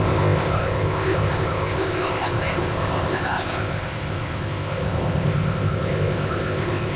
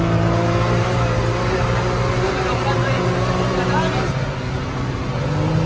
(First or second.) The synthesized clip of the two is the first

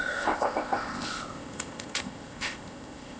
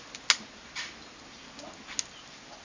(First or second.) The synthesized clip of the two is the first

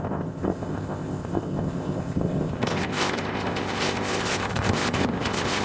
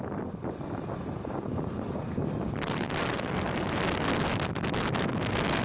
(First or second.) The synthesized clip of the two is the first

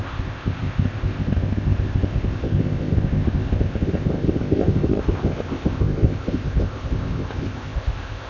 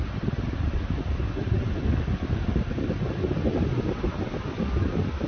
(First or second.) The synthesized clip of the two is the first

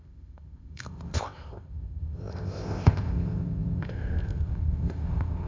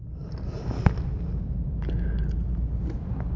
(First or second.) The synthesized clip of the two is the first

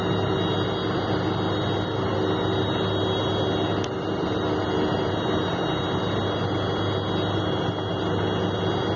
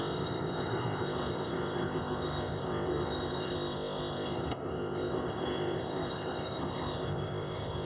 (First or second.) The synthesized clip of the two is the second